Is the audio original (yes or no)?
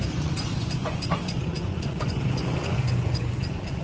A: no